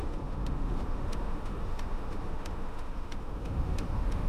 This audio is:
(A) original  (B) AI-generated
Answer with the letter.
B